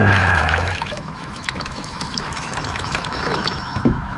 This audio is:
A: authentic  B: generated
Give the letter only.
B